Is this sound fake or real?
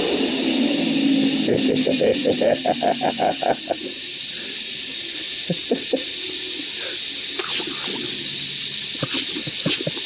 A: real